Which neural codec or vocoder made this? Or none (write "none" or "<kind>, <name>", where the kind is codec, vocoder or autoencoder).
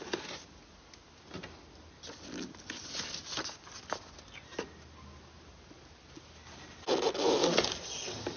none